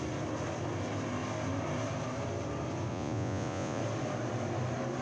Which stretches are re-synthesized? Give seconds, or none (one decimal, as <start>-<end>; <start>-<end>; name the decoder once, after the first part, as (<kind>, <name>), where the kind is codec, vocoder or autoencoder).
2.9-3.8 (vocoder, Vocos)